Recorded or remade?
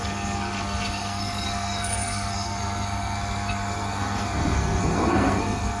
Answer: remade